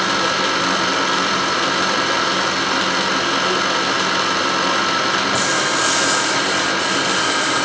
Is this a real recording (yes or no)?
yes